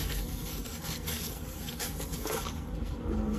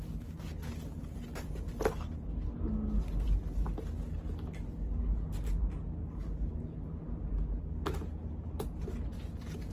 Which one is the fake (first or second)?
first